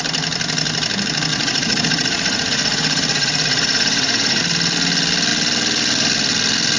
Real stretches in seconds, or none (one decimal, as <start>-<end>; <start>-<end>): 0.0-1.3; 4.4-6.8